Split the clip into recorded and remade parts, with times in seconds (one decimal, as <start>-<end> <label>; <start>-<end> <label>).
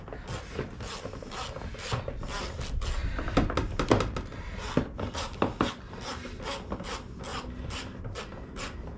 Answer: 0.0-7.3 recorded; 7.3-8.0 remade; 8.0-9.0 recorded